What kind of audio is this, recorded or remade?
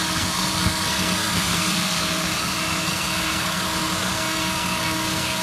remade